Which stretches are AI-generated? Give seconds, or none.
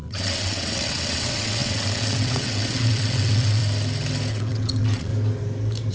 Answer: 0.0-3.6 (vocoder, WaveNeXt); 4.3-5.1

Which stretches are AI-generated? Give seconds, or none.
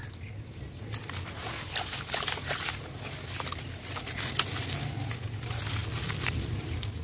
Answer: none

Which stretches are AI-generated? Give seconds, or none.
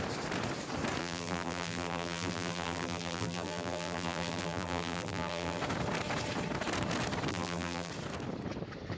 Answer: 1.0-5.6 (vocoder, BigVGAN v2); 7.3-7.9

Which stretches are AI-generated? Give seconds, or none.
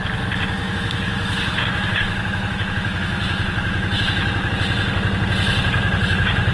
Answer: 0.6-4.5 (autoencoder, DAC-VAE)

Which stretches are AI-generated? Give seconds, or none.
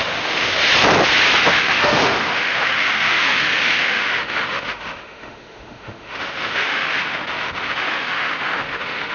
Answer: 0.0-0.6 (autoencoder, DAC-VAE); 1.5-9.1